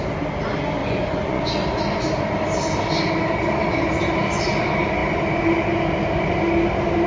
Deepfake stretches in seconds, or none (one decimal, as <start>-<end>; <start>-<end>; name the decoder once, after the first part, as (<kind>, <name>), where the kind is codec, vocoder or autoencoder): 0.8-1.5 (vocoder, Vocos)